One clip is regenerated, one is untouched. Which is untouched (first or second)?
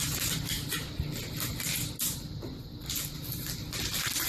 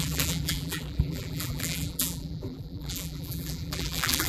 first